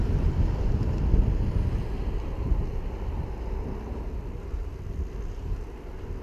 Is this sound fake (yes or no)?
no